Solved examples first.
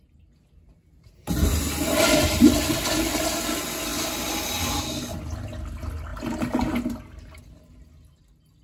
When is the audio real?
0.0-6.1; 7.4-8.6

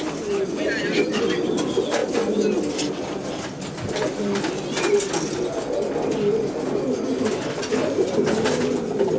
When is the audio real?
0.0-9.2